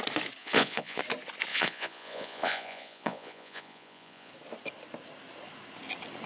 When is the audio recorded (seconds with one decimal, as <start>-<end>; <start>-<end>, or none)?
0.0-0.4; 1.0-1.5; 4.3-6.3